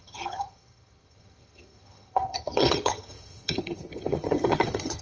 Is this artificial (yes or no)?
yes